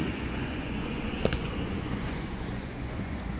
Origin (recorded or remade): remade